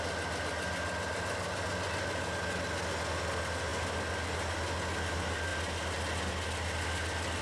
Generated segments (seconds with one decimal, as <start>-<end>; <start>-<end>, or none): none

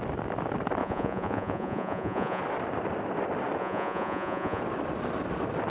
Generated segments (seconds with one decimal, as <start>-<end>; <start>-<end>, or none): 0.8-2.4; 3.6-4.6